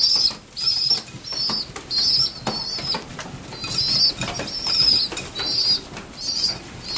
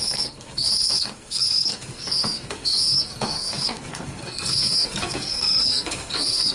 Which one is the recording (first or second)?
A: first